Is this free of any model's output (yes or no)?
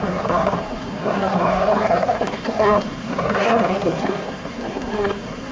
no